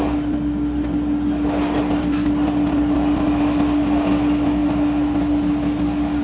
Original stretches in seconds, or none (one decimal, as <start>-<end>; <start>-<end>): 0.0-6.2